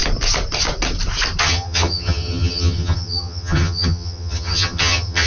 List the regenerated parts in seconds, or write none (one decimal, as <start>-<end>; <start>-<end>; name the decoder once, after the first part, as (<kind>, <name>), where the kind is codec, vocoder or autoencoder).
1.4-5.3 (vocoder, HiFi-GAN)